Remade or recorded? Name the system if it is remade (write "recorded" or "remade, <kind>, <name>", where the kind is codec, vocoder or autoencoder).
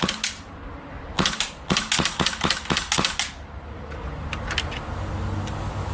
recorded